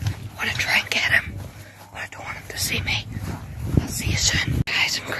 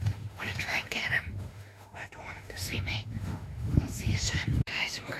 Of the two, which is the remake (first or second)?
second